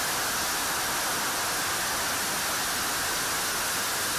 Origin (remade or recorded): recorded